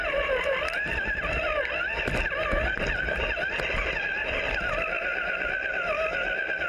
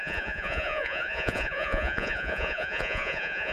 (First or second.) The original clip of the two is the first